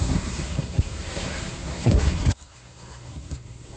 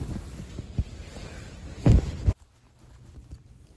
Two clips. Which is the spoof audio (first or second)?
first